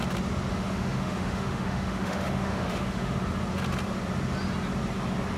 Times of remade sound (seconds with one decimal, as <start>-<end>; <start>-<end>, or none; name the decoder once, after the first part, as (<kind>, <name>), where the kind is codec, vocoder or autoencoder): 0.5-3.2 (autoencoder, DAC-VAE)